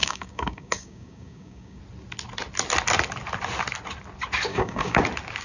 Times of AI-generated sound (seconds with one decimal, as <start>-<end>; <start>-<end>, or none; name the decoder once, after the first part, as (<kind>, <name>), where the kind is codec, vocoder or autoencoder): 0.0-1.8 (codec, DAC); 4.5-5.0